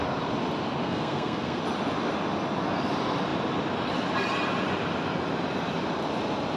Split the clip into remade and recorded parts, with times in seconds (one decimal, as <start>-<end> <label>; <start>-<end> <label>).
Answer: 0.0-0.8 recorded; 0.8-1.6 remade; 1.6-6.6 recorded